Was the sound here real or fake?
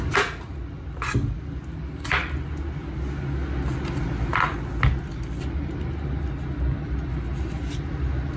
real